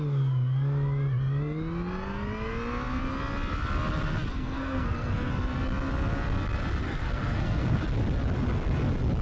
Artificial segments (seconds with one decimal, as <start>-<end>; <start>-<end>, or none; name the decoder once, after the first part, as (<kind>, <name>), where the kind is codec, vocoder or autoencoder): 4.3-5.3 (codec, SNAC); 6.8-7.8